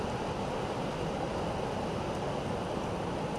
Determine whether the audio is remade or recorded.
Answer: recorded